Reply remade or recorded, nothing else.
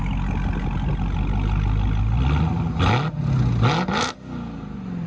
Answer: recorded